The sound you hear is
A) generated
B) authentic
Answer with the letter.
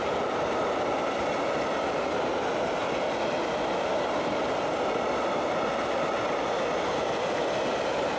B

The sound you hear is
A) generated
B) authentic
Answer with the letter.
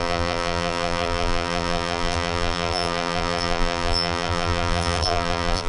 A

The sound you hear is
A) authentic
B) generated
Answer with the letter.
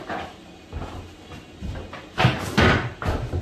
A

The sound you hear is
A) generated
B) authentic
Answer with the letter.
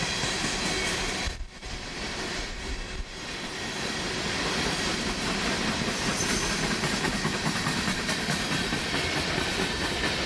A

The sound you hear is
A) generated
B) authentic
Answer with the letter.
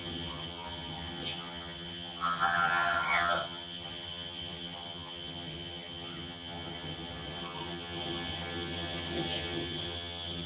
A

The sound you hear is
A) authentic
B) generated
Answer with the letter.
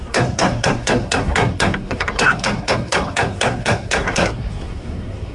B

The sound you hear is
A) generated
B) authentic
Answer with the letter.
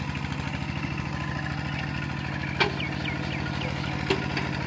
B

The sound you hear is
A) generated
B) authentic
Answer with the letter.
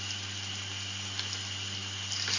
B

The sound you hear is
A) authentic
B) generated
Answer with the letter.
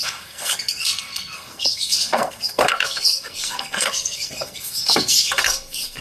B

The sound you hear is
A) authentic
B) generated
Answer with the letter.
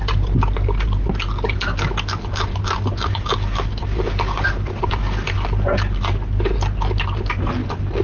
A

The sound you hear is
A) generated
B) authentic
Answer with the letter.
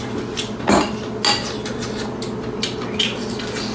B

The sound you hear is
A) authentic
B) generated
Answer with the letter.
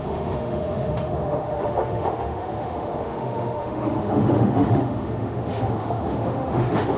B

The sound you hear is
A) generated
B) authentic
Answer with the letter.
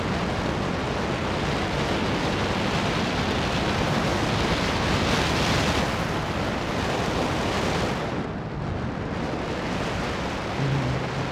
B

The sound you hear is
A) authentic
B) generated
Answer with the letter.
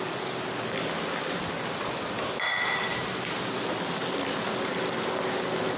A